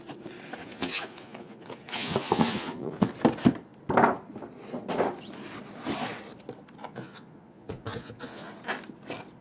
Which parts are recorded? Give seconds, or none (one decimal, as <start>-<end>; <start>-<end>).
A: 0.0-0.6; 3.1-6.8; 8.5-9.4